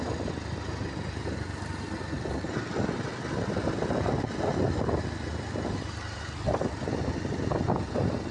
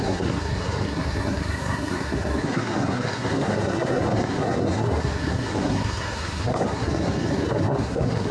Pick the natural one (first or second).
first